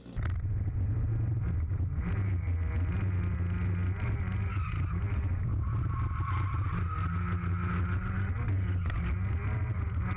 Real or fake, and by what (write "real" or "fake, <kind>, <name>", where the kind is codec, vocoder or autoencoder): real